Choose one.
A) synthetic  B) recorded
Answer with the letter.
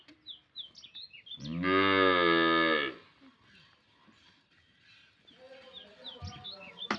B